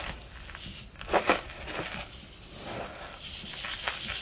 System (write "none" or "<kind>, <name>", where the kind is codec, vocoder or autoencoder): none